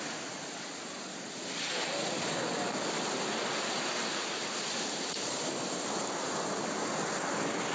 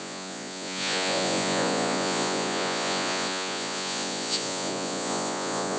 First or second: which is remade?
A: second